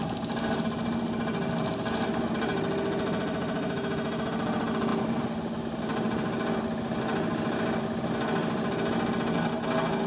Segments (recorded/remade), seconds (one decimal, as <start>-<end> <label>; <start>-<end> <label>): 0.0-10.1 recorded